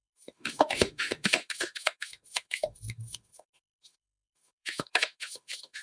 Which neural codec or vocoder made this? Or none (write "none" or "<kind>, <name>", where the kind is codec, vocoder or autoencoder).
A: autoencoder, DAC-VAE